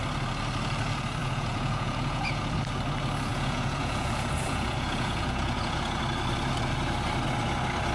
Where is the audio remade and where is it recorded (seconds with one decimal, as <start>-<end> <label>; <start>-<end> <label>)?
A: 0.0-1.2 recorded; 1.2-2.4 remade; 2.4-3.3 recorded; 3.3-6.0 remade; 6.0-7.9 recorded